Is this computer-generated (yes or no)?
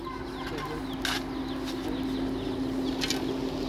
no